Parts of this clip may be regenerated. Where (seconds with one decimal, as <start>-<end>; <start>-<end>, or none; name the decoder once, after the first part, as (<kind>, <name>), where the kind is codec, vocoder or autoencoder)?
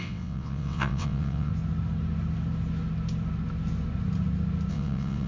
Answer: 0.0-1.5 (vocoder, WaveNeXt); 4.7-5.3